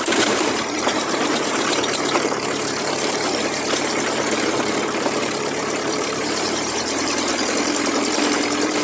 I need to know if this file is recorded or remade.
remade